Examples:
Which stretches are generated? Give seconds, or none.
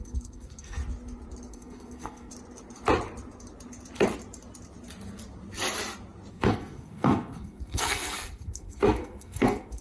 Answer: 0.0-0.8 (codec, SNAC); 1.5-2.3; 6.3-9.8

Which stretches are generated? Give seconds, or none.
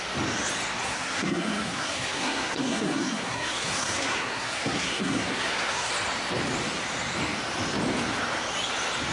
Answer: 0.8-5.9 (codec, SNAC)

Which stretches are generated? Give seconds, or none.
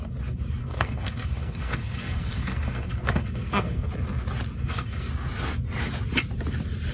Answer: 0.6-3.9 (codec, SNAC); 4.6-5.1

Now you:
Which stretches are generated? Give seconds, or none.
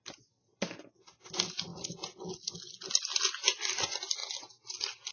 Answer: none